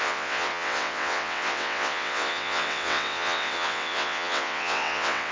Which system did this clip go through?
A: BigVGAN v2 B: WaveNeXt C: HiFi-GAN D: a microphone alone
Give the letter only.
B